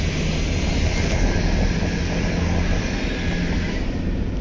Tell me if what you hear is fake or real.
real